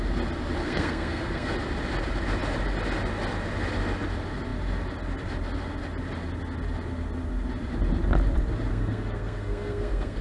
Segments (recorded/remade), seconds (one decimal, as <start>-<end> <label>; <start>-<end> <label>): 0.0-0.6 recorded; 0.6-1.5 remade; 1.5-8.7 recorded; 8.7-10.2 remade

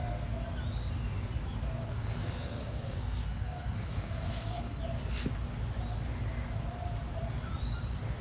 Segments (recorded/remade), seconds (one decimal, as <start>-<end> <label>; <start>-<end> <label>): 0.0-1.9 recorded; 1.9-4.8 remade; 4.8-8.2 recorded

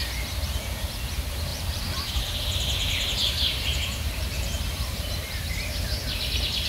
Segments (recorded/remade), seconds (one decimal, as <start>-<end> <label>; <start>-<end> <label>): 0.0-1.5 recorded; 1.5-5.5 remade; 5.5-6.7 recorded

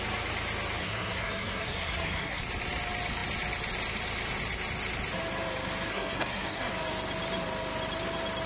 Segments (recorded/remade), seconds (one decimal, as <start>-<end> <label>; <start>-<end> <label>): 0.0-0.8 recorded; 0.8-2.4 remade; 2.4-5.9 recorded; 5.9-6.7 remade; 6.7-8.5 recorded

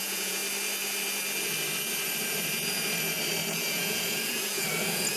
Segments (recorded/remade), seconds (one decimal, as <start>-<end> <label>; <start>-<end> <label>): 0.0-0.4 remade; 0.4-3.5 recorded; 3.5-5.2 remade

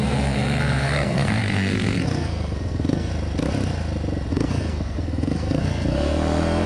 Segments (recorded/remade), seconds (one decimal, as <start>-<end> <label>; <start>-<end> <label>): 0.0-3.1 remade; 3.1-4.3 recorded; 4.3-6.7 remade

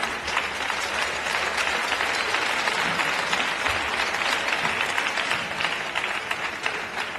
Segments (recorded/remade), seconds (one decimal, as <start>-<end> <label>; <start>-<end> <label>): 0.0-1.8 remade; 1.8-6.1 recorded; 6.1-7.2 remade